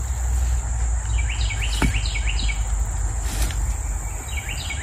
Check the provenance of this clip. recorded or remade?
recorded